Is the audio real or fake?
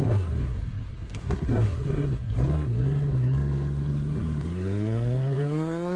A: fake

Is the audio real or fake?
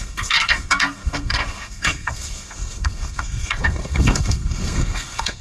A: fake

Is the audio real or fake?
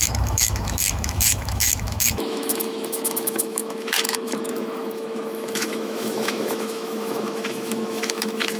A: fake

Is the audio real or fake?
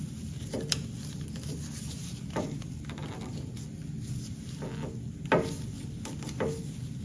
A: real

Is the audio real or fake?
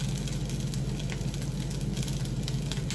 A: real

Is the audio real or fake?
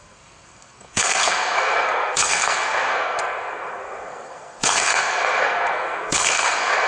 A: fake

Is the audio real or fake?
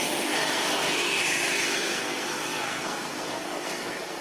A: fake